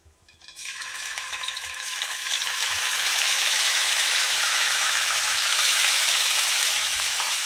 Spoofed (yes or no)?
yes